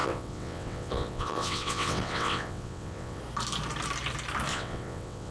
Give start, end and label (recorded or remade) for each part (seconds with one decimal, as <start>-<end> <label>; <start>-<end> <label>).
0.0-3.2 remade; 3.2-4.5 recorded; 4.5-5.3 remade